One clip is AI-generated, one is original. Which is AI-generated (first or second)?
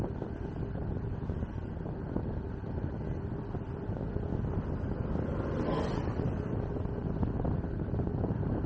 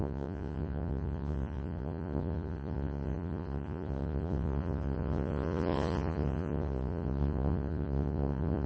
second